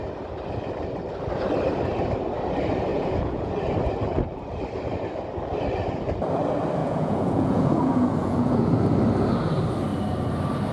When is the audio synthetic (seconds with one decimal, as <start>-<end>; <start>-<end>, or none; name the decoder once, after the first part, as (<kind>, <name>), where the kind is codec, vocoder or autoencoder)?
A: 2.9-3.5 (vocoder, Vocos); 6.8-8.7